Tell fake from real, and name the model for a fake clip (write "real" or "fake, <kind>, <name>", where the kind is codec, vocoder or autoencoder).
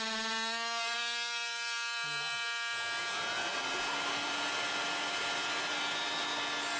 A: real